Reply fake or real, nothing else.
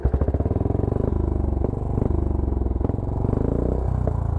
real